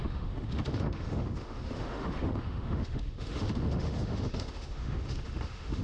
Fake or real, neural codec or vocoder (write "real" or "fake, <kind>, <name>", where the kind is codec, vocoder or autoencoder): fake, autoencoder, DAC-VAE